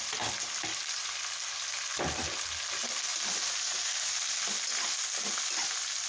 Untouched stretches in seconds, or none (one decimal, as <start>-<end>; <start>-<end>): 0.0-6.1